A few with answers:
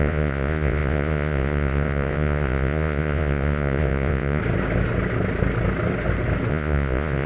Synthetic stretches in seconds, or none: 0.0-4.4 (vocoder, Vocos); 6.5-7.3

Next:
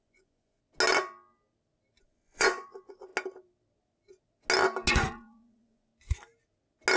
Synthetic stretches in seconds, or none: 0.0-0.6 (vocoder, Vocos); 2.0-3.1; 4.9-5.9

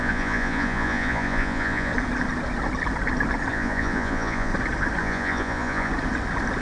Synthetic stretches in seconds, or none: 0.0-1.9 (vocoder, Vocos); 3.5-4.5; 5.0-5.9

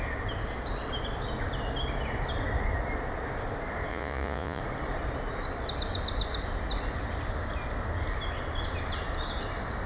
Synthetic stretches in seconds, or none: 3.9-4.6 (vocoder, Vocos)

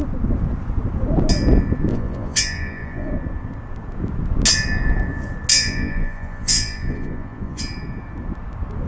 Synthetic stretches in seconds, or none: 1.9-3.1 (vocoder, Vocos); 5.5-7.6

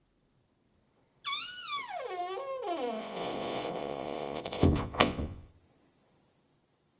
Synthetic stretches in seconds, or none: 3.0-5.5 (vocoder, Vocos)